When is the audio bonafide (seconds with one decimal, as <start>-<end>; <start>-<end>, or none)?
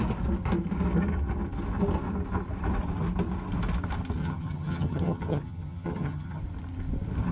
0.0-4.2; 6.4-7.3